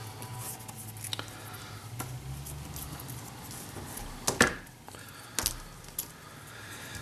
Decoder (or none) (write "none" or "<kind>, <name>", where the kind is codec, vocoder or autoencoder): none